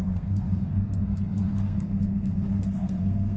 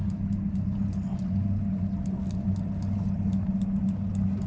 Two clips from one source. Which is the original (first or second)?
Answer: second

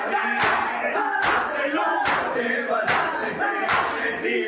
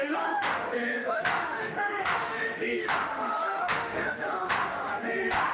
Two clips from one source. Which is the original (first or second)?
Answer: first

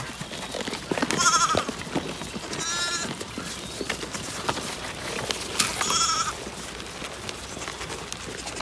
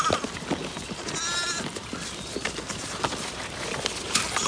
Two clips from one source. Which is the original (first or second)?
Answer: first